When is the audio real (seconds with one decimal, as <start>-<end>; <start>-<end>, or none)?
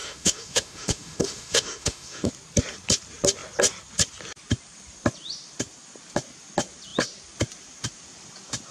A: 2.3-8.7